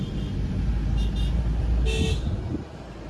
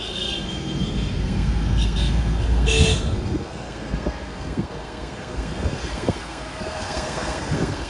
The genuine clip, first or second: first